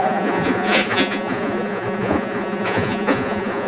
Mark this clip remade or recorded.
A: remade